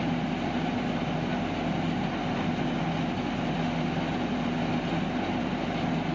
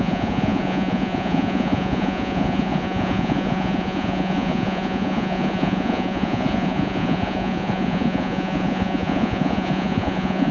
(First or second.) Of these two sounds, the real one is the first